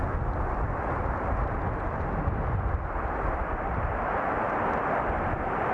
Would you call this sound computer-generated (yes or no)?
no